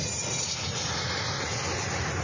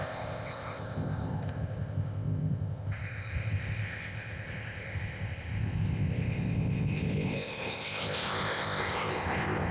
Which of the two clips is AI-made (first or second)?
second